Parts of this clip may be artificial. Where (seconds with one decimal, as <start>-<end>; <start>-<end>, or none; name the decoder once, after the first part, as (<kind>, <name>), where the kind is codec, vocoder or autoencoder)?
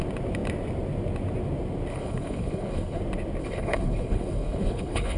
1.9-3.0 (codec, HILCodec); 3.4-5.2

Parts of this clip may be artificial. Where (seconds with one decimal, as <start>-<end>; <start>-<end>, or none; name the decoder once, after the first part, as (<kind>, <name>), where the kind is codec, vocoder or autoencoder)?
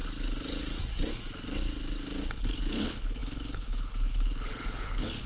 2.4-5.3 (codec, HILCodec)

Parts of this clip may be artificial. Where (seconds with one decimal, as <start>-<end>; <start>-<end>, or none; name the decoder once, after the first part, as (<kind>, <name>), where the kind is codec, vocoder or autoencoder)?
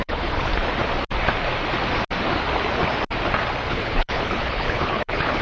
0.0-0.5 (codec, HILCodec); 3.7-5.4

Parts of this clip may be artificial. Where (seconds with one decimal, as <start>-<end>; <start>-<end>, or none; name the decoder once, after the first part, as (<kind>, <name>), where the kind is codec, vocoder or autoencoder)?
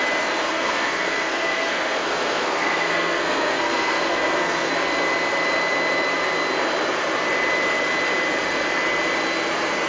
0.4-4.7 (codec, SNAC)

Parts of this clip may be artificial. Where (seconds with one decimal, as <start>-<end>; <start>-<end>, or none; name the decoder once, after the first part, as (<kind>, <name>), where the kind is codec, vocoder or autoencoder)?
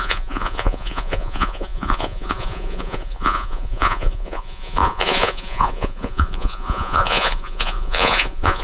0.0-8.6 (vocoder, Vocos)